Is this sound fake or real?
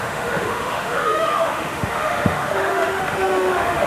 fake